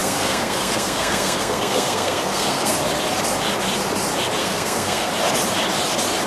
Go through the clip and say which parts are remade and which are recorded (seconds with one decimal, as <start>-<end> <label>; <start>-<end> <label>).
0.0-2.8 remade; 2.8-4.4 recorded; 4.4-5.1 remade; 5.1-6.3 recorded